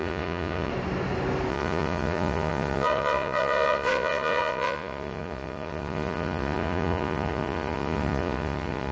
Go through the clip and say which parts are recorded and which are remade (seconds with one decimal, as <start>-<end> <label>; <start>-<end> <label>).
0.0-0.7 remade; 0.7-1.5 recorded; 1.5-8.9 remade